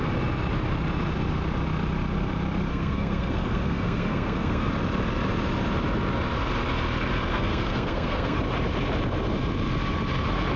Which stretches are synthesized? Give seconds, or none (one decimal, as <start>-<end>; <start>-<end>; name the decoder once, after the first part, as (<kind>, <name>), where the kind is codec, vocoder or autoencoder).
2.7-4.7 (codec, SNAC); 7.3-8.4